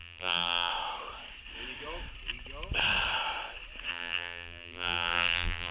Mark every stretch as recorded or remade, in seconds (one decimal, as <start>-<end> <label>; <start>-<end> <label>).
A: 0.0-0.7 remade; 0.7-3.9 recorded; 3.9-5.7 remade